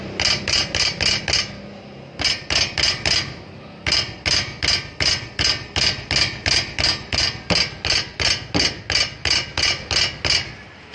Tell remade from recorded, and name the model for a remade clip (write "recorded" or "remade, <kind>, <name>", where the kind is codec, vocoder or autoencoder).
recorded